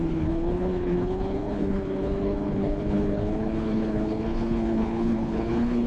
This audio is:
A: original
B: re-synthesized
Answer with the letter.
B